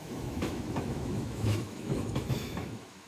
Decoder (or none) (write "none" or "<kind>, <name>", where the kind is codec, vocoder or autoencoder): autoencoder, DAC-VAE